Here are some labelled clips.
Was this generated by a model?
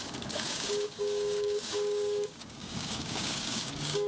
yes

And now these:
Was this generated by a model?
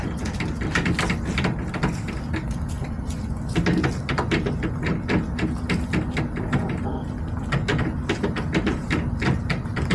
no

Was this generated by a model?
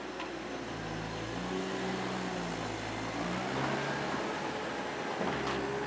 no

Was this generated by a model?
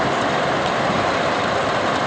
no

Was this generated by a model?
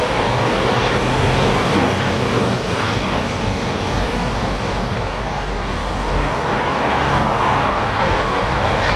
yes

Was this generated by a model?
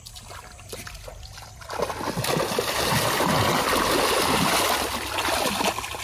no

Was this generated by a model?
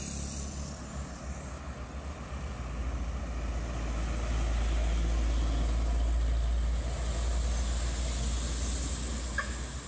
no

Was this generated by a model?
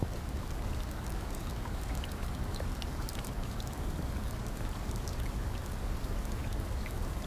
yes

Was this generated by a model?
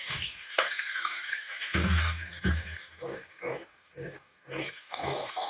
yes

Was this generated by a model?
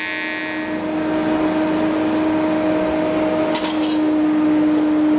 no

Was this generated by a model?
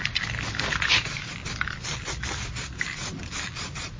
no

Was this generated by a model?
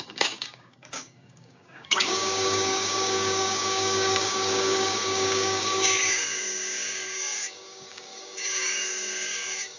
yes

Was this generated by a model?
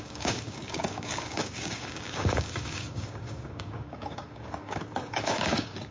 yes